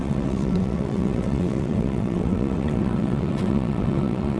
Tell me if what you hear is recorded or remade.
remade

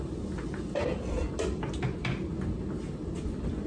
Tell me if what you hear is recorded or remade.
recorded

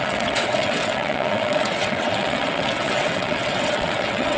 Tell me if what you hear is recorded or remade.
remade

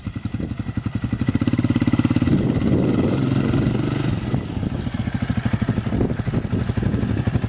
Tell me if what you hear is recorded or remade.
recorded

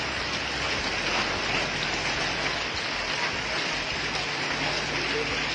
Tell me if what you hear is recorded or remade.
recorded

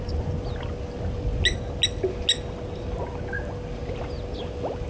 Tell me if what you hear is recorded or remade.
recorded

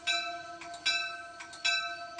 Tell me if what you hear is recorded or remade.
recorded